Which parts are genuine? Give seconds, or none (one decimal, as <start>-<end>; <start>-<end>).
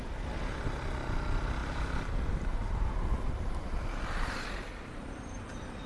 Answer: 0.0-1.6; 5.1-5.9